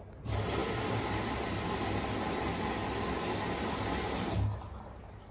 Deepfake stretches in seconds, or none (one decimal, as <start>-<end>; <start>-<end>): none